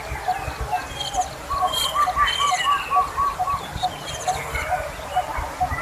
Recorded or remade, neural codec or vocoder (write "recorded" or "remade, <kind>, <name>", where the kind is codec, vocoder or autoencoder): recorded